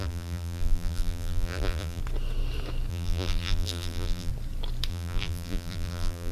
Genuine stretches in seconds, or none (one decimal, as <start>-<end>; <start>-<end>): 2.0-2.9; 4.3-4.9